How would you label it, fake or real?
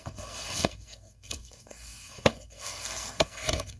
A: fake